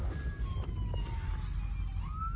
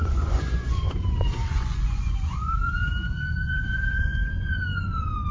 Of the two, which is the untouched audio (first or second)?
first